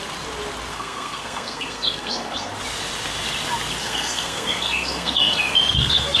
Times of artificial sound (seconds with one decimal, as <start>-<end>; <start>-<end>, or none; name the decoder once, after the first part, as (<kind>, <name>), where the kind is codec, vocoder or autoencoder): 0.7-2.5 (codec, SNAC); 3.8-6.2